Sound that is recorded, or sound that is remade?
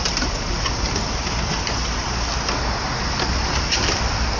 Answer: recorded